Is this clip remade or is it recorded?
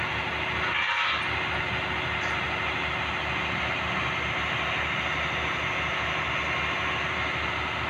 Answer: recorded